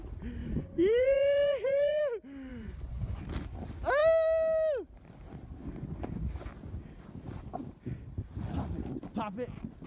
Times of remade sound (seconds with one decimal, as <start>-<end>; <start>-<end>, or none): 0.4-2.0; 2.5-3.2